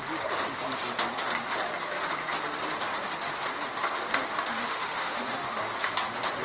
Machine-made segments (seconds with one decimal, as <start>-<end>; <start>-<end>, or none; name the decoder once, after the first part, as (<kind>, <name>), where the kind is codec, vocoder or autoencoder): 4.1-5.6 (autoencoder, DAC-VAE)